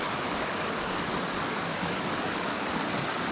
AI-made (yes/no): yes